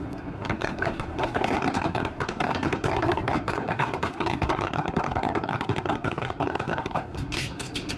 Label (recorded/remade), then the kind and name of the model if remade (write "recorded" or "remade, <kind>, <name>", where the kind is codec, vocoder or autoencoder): remade, codec, SNAC